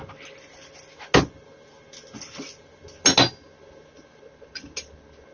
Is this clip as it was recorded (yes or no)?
yes